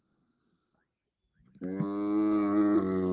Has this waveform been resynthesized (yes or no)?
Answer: no